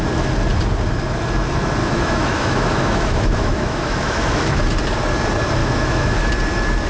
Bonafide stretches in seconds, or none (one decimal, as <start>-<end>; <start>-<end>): 0.0-1.8; 4.6-5.6; 6.3-6.9